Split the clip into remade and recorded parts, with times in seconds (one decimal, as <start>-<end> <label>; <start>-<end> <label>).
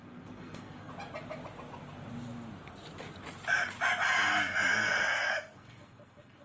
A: 0.0-0.9 remade; 0.9-4.7 recorded; 4.7-6.4 remade